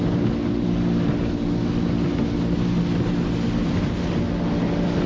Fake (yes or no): no